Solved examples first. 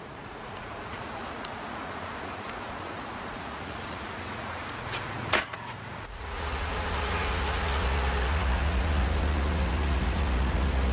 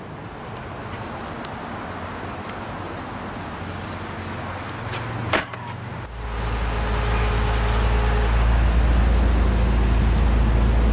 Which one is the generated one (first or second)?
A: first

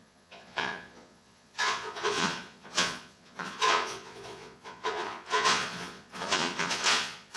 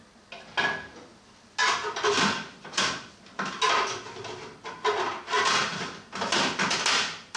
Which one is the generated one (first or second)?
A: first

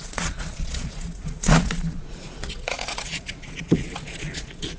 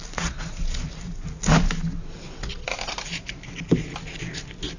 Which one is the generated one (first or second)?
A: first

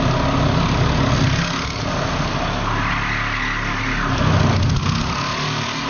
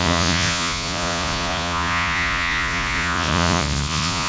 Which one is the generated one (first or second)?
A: second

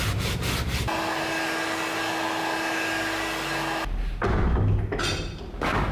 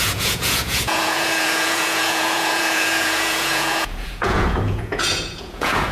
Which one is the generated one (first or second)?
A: second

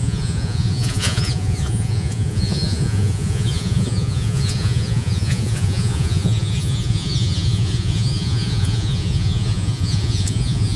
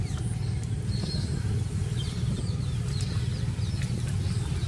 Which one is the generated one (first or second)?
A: first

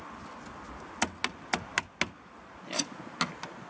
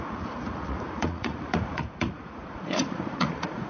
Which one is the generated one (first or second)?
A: second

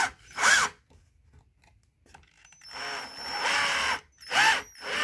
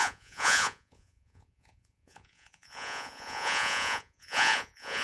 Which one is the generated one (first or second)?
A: second